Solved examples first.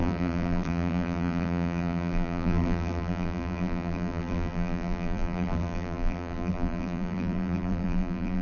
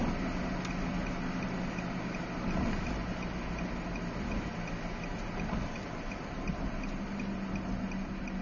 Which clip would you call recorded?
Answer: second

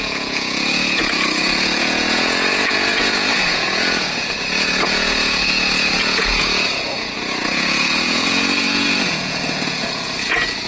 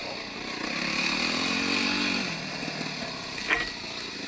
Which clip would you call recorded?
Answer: second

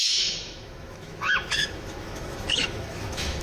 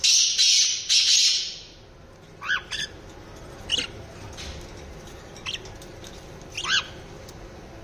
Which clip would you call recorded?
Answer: second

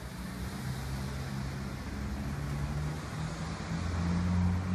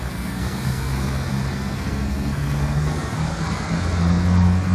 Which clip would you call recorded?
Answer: first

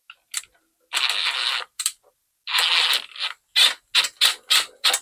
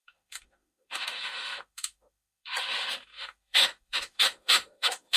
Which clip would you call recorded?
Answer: first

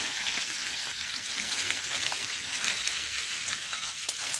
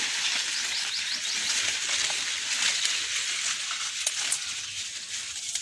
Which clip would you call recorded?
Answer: second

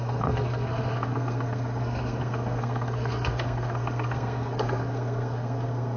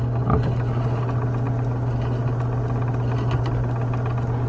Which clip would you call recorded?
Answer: second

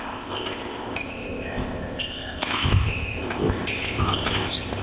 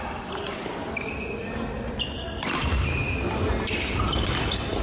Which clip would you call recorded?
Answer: second